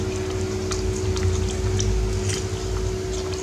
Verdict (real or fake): real